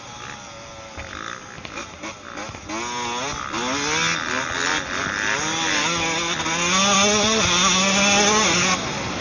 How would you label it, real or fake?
real